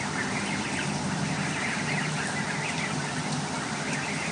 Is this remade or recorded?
recorded